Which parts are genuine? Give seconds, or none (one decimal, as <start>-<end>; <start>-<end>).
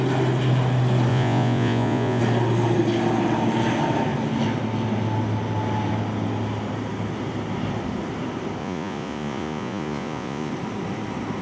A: 0.0-1.1; 2.2-8.6; 10.5-11.4